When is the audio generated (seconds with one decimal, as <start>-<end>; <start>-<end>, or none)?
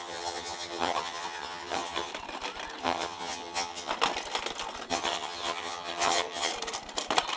0.0-2.1; 2.8-3.9; 4.9-6.5